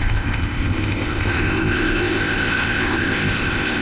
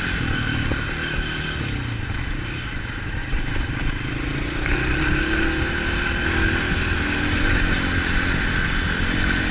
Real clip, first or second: second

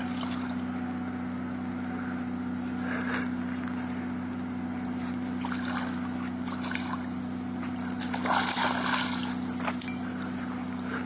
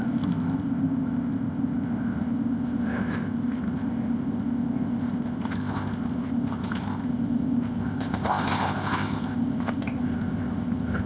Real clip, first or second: first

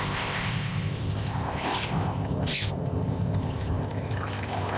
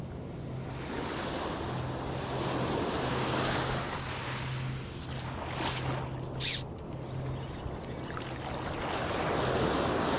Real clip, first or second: second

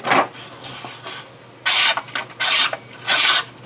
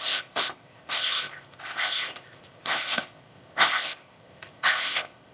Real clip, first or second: first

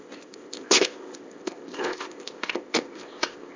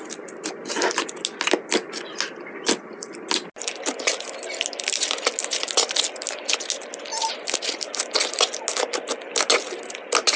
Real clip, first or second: second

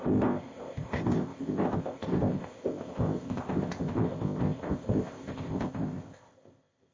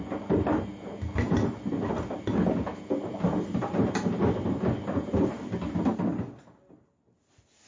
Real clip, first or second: second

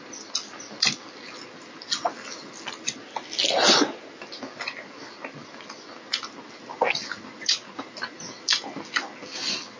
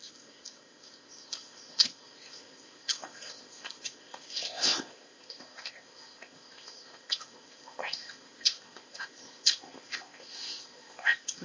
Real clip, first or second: first